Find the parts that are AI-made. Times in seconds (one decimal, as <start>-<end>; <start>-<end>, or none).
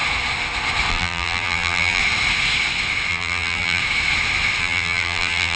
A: 0.9-2.0; 3.1-3.8; 4.6-5.6